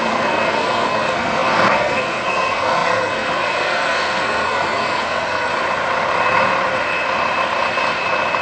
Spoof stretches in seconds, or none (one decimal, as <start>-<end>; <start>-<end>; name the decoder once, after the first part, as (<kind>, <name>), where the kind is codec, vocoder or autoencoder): 0.0-5.5 (codec, SNAC)